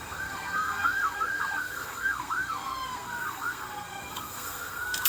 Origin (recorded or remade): remade